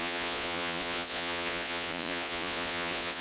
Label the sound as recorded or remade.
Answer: remade